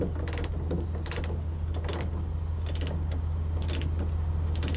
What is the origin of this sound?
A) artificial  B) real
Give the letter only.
B